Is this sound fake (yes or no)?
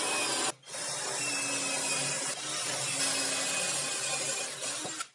no